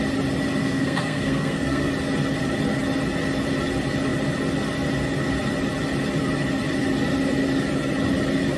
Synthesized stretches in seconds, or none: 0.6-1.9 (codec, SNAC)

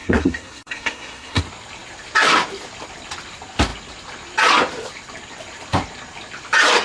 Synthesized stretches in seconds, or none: 0.0-1.4 (codec, SNAC)

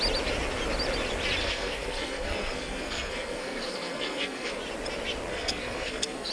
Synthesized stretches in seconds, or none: 1.4-4.6 (codec, SNAC); 5.3-6.3

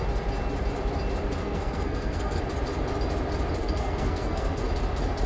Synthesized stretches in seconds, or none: 1.4-2.4 (codec, SNAC); 3.6-4.7

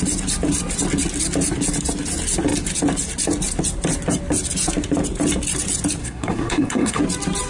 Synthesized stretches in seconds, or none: 6.0-7.0 (codec, SNAC)

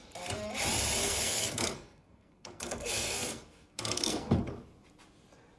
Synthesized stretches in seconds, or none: 1.0-4.4 (codec, SNAC)

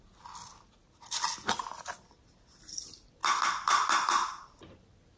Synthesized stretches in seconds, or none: none

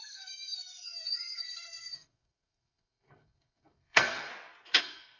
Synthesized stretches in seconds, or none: 0.0-4.3 (codec, SNAC); 4.8-5.2